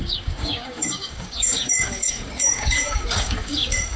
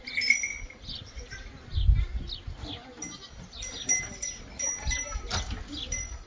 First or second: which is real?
second